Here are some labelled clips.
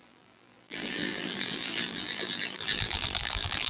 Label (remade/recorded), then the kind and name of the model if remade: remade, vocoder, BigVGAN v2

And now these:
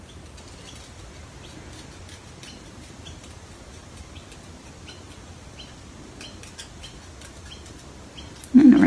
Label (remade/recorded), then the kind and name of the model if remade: recorded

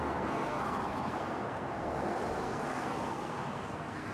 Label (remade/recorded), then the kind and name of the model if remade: remade, codec, SNAC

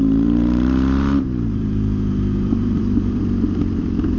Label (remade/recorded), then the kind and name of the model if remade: remade, vocoder, BigVGAN v2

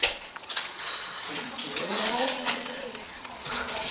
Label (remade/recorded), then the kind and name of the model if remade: remade, vocoder, Vocos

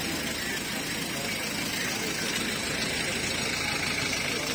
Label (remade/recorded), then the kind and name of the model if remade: recorded